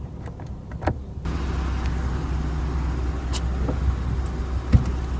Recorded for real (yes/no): yes